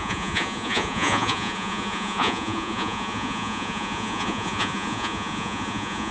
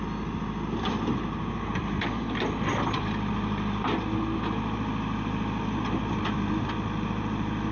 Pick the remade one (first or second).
first